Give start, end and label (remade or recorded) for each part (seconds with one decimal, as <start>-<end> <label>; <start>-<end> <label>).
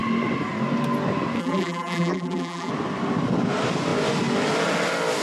0.0-1.4 recorded; 1.4-2.7 remade; 2.7-5.2 recorded